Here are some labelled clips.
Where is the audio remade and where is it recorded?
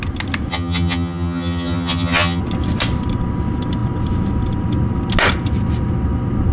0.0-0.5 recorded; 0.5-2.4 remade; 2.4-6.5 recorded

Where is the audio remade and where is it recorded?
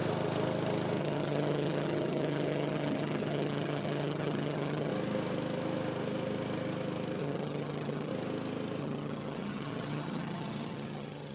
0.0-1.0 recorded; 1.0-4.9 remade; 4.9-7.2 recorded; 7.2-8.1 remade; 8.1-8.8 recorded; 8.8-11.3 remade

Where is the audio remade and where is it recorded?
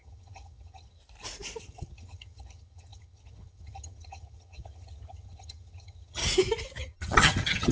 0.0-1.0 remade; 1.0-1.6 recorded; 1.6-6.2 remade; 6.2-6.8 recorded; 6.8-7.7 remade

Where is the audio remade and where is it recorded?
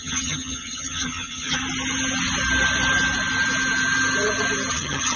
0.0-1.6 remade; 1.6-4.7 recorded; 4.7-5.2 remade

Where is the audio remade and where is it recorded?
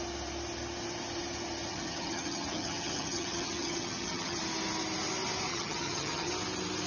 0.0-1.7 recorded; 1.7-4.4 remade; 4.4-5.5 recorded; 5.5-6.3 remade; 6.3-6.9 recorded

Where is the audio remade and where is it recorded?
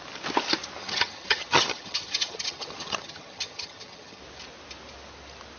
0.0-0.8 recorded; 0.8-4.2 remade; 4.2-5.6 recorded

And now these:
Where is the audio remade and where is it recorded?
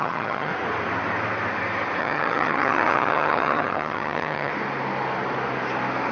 0.0-0.5 remade; 0.5-2.0 recorded; 2.0-4.5 remade; 4.5-6.1 recorded